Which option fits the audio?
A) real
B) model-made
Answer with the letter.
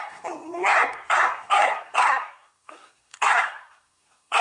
B